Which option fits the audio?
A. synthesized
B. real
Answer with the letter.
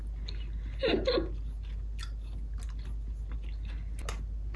B